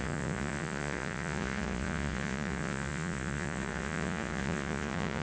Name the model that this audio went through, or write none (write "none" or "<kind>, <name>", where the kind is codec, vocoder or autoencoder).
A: vocoder, Vocos